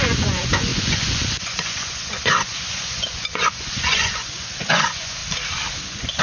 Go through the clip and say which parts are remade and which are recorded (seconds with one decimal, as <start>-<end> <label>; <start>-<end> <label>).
0.0-5.2 remade; 5.2-5.8 recorded; 5.8-6.2 remade